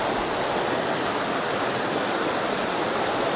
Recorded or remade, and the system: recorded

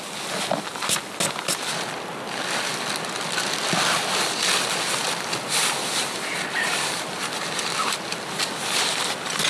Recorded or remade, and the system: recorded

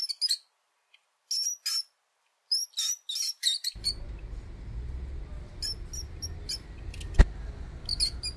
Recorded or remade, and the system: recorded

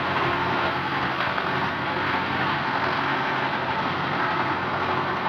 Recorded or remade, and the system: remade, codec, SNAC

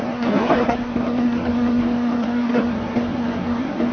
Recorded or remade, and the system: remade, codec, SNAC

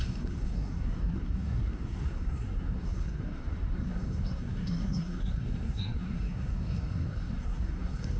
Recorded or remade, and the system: remade, codec, SNAC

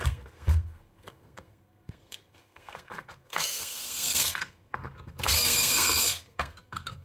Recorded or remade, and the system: remade, codec, SNAC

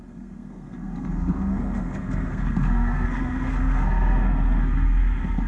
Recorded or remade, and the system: remade, codec, SNAC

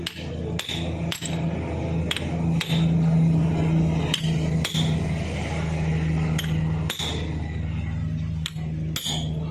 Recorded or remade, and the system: recorded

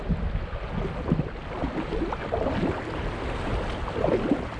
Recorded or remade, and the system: recorded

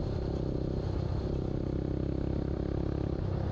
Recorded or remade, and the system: recorded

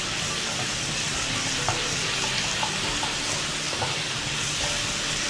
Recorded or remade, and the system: recorded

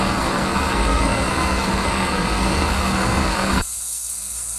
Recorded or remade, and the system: remade, codec, SNAC